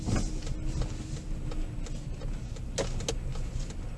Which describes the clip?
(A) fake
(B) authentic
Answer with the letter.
B